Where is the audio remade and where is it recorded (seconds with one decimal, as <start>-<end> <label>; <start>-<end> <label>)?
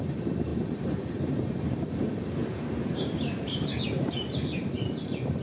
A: 0.0-5.4 remade